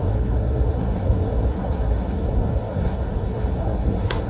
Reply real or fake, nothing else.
fake